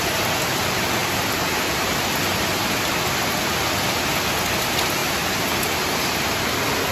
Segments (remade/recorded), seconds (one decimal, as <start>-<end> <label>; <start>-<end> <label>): 0.0-1.0 recorded; 1.0-1.9 remade; 1.9-5.0 recorded; 5.0-6.4 remade; 6.4-6.9 recorded